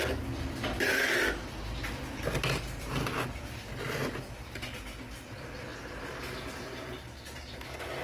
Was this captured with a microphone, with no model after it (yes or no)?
yes